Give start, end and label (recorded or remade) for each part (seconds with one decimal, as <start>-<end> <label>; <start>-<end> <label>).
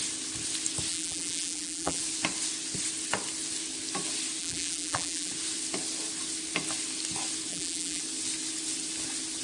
0.0-0.9 recorded; 0.9-2.0 remade; 2.0-4.4 recorded; 4.4-5.3 remade; 5.3-7.5 recorded; 7.5-8.0 remade; 8.0-9.4 recorded